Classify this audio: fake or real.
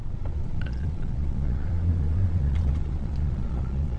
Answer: fake